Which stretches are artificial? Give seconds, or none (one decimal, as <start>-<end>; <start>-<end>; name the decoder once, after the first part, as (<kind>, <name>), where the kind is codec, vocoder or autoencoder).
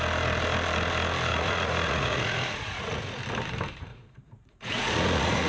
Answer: 1.3-3.2 (vocoder, Vocos); 3.9-5.5